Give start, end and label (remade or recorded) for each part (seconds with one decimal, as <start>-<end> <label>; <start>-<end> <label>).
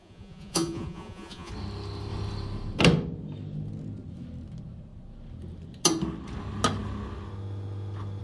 0.0-1.5 remade; 1.5-8.2 recorded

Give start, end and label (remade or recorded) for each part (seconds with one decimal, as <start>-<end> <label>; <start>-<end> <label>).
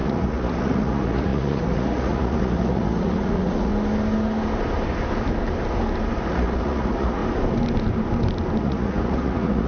0.0-3.7 remade; 3.7-6.3 recorded; 6.3-7.2 remade; 7.2-8.6 recorded; 8.6-9.7 remade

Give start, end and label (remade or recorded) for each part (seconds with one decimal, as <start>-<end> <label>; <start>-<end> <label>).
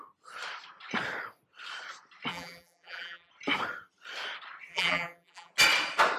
0.0-2.3 recorded; 2.3-3.3 remade; 3.3-4.7 recorded; 4.7-5.5 remade; 5.5-6.2 recorded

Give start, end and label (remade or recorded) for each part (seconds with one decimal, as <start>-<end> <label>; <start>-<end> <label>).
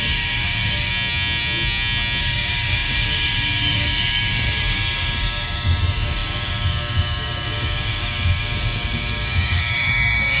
0.0-0.9 remade; 0.9-2.2 recorded; 2.2-10.4 remade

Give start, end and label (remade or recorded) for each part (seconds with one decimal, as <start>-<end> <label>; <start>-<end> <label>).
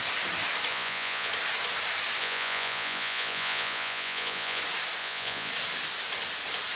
0.0-0.7 recorded; 0.7-1.3 remade; 1.3-2.2 recorded; 2.2-4.6 remade; 4.6-5.0 recorded; 5.0-5.5 remade; 5.5-6.8 recorded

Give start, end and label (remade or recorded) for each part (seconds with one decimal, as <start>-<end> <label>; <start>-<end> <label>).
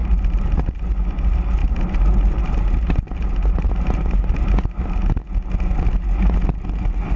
0.0-0.9 remade; 0.9-1.6 recorded; 1.6-4.5 remade; 4.5-7.2 recorded